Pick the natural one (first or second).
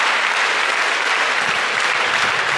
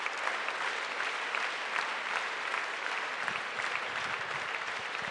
first